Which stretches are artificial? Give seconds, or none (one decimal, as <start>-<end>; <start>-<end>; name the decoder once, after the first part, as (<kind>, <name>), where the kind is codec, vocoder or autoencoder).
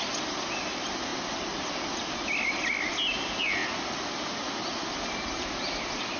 none